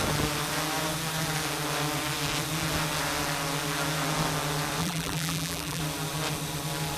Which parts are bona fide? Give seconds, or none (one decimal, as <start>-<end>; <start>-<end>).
0.0-4.8; 5.8-7.0